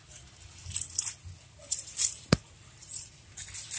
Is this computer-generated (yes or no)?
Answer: no